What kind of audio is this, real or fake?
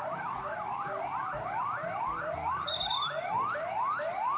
real